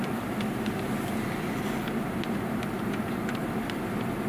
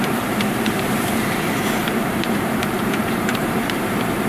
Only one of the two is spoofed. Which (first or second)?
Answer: second